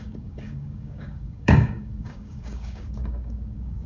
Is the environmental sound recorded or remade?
remade